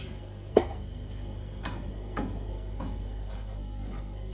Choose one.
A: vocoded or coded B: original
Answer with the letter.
A